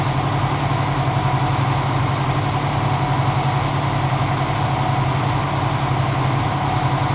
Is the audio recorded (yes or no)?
yes